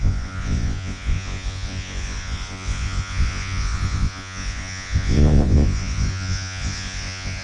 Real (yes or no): no